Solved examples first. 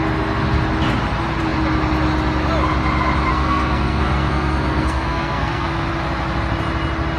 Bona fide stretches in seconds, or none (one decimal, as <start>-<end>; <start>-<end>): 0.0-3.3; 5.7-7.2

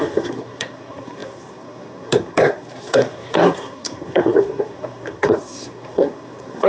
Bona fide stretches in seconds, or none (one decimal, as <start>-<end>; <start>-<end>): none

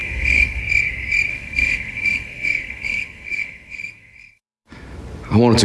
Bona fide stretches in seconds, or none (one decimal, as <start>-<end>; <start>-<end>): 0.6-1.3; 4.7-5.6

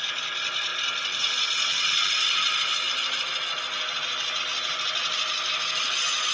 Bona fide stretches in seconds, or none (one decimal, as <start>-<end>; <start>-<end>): 0.0-6.3

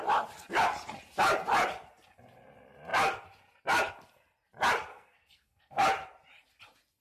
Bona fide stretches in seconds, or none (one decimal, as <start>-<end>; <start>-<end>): 0.0-4.9; 5.8-7.0

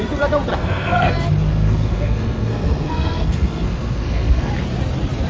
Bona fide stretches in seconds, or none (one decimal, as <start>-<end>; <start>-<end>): 0.0-0.5; 1.1-1.5; 4.5-5.3

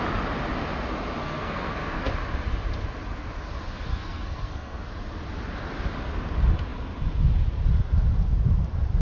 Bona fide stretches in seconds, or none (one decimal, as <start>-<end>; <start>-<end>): 0.0-1.2; 2.1-3.9; 4.9-9.0

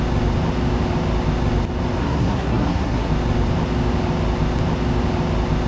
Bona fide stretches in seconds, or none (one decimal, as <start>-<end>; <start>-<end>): 0.0-2.0; 3.1-5.7